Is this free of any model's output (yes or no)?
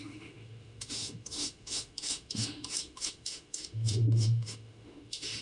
no